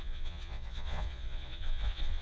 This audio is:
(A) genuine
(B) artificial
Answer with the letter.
B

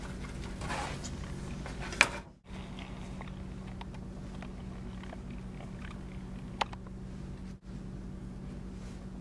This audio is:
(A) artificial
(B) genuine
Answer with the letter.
B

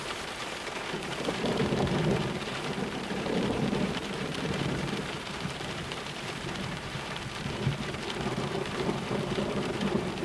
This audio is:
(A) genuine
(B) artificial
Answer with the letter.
B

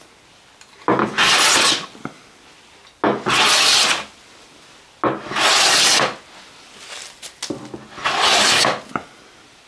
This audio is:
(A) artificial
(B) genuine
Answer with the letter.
B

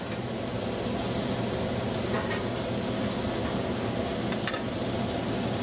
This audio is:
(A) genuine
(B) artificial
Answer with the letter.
A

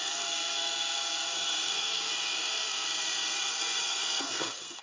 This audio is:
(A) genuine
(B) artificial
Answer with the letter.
B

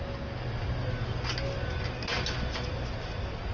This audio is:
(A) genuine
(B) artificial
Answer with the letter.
A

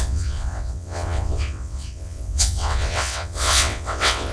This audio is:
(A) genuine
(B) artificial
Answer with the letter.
B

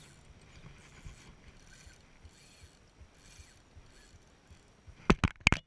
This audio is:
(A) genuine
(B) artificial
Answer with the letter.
A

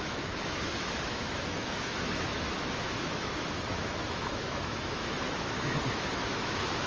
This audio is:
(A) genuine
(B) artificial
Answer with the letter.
B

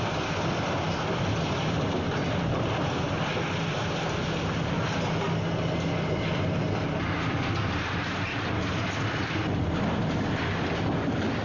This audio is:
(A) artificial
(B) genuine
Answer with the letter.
B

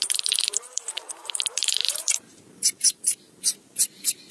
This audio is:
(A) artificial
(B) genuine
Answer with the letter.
A